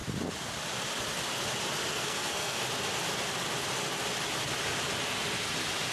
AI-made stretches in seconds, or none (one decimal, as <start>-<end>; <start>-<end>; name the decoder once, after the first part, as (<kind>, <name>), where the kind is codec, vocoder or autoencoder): 1.9-2.6 (codec, SNAC)